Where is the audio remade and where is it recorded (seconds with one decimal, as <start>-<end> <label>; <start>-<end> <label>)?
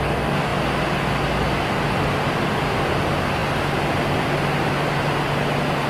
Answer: 0.0-5.9 recorded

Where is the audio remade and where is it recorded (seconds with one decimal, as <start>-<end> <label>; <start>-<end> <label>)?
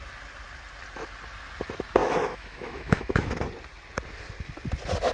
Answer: 0.0-2.0 recorded; 2.0-3.3 remade; 3.3-5.1 recorded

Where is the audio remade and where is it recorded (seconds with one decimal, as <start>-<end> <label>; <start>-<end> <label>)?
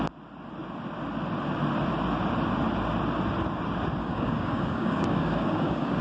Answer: 0.0-4.0 recorded; 4.0-6.0 remade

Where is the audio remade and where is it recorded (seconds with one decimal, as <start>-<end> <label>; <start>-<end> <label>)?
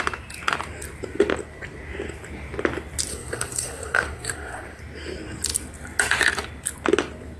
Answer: 0.0-3.1 recorded; 3.1-4.8 remade; 4.8-7.4 recorded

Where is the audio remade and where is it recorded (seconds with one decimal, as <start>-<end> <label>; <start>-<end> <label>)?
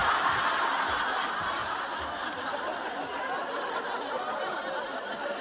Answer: 0.0-0.7 remade; 0.7-5.4 recorded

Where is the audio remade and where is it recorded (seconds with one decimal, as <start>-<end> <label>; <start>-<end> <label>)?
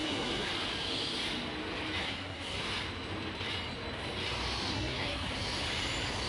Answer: 0.0-0.5 remade; 0.5-2.0 recorded; 2.0-2.6 remade; 2.6-4.7 recorded; 4.7-5.3 remade; 5.3-6.3 recorded